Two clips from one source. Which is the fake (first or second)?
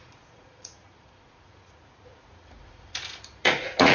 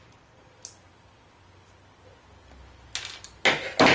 first